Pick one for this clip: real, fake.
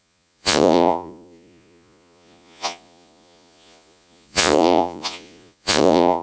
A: fake